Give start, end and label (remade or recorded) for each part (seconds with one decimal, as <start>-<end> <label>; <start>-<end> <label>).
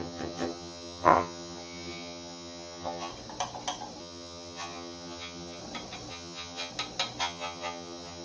0.0-3.1 remade; 3.1-4.0 recorded; 4.0-5.6 remade; 5.6-6.1 recorded; 6.1-6.7 remade; 6.7-7.2 recorded; 7.2-8.2 remade